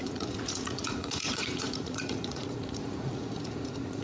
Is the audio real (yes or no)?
no